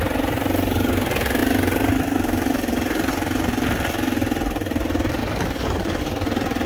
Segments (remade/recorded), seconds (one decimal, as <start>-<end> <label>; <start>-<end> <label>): 0.0-5.2 recorded; 5.2-6.0 remade; 6.0-6.7 recorded